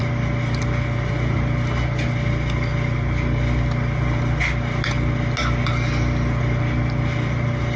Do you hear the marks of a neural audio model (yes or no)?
no